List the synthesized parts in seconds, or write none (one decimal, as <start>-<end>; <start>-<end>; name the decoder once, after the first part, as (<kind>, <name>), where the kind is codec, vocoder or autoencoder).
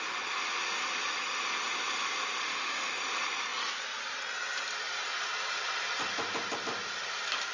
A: 2.4-2.9 (autoencoder, DAC-VAE)